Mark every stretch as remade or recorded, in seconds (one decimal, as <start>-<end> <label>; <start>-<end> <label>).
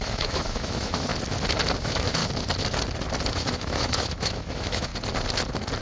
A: 0.0-1.1 remade; 1.1-1.8 recorded; 1.8-2.2 remade; 2.2-3.3 recorded; 3.3-4.9 remade; 4.9-5.8 recorded